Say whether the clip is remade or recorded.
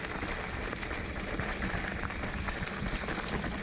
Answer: recorded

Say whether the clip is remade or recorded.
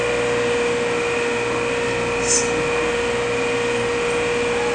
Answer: recorded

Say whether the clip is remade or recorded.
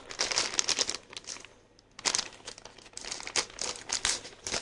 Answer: recorded